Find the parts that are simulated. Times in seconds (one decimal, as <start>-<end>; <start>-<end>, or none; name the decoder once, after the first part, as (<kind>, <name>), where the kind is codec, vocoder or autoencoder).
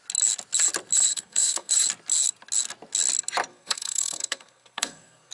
1.1-1.7 (codec, SNAC); 3.5-5.3